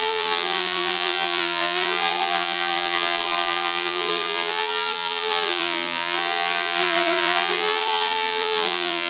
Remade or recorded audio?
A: remade